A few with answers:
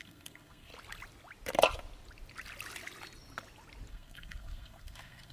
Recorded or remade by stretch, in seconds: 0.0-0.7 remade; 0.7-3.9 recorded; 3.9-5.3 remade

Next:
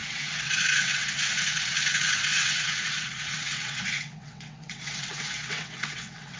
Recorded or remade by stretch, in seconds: 0.0-6.4 remade

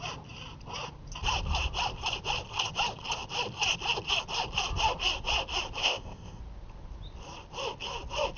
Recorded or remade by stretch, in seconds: 0.0-5.8 recorded; 5.8-6.4 remade; 6.4-8.4 recorded

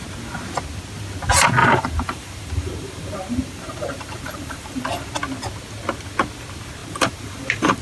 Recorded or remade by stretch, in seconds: 0.0-1.6 recorded; 1.6-4.8 remade; 4.8-6.8 recorded; 6.8-7.8 remade

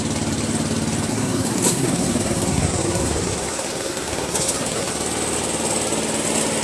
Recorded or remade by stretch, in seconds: 0.0-1.1 recorded; 1.1-4.9 remade; 4.9-6.6 recorded

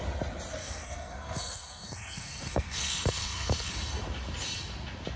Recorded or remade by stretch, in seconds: 0.0-0.6 recorded; 0.6-3.7 remade; 3.7-5.2 recorded

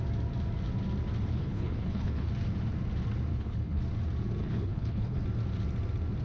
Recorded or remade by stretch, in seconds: 0.0-1.3 recorded; 1.3-2.3 remade; 2.3-3.3 recorded; 3.3-3.8 remade; 3.8-4.4 recorded; 4.4-5.2 remade; 5.2-6.2 recorded

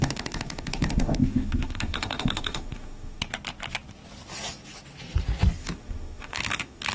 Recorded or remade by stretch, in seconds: 0.0-3.2 remade; 3.2-5.6 recorded; 5.6-6.9 remade